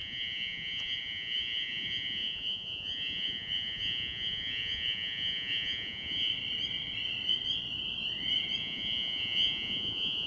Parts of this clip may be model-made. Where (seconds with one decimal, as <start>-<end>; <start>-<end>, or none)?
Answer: 0.0-6.3; 8.6-10.3

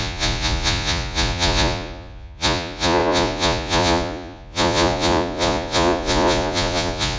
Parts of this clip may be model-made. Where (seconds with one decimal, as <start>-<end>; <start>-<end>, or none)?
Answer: 0.0-7.2

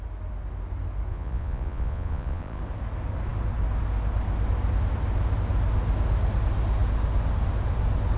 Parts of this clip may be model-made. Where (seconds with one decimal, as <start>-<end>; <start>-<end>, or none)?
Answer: 1.1-2.6

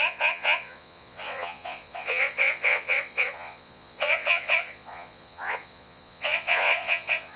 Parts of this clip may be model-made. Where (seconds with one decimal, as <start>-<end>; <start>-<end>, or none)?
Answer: 0.0-7.4

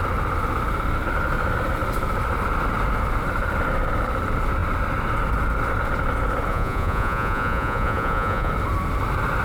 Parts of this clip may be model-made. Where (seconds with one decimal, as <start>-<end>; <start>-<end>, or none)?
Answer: 6.5-8.5

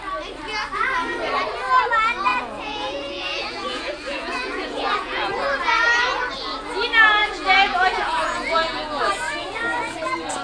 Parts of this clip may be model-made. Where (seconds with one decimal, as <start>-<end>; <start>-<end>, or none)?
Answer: 2.3-5.3; 7.2-9.1